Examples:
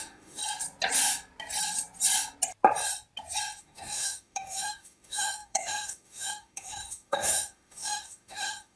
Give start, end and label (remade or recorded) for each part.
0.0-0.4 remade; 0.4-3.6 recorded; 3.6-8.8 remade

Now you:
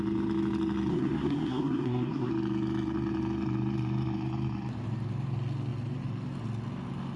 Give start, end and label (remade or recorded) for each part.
0.0-0.9 recorded; 0.9-2.3 remade; 2.3-7.2 recorded

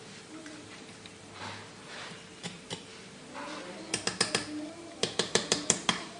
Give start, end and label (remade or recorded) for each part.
0.0-2.9 remade; 2.9-4.7 recorded; 4.7-6.2 remade

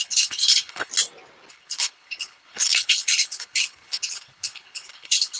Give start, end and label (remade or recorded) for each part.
0.0-0.9 remade; 0.9-1.5 recorded; 1.5-5.4 remade

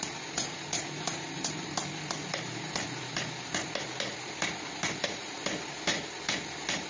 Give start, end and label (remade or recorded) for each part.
0.0-6.9 recorded